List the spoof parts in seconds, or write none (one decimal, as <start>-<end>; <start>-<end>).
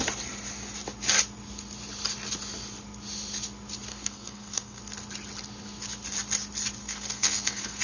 3.9-4.8; 6.8-7.8